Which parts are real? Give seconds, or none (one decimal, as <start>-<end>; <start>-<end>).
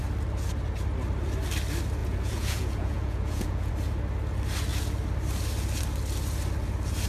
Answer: 0.0-2.0; 3.7-7.1